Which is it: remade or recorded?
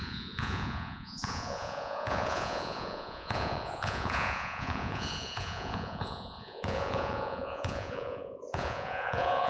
remade